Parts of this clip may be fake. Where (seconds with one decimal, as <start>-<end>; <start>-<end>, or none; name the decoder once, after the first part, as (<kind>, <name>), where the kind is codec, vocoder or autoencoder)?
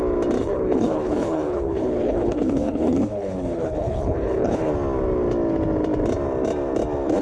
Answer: 0.4-4.7 (codec, HILCodec)